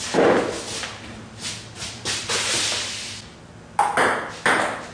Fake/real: real